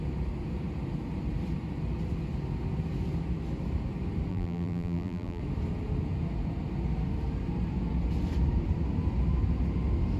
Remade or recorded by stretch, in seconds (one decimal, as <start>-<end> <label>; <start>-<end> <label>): 0.0-4.3 recorded; 4.3-5.4 remade; 5.4-10.2 recorded